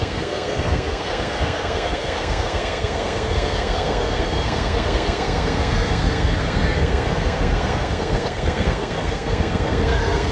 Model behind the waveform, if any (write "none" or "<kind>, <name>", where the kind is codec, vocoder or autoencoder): codec, SNAC